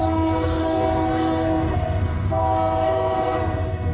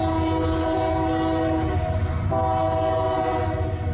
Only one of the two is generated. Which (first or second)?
first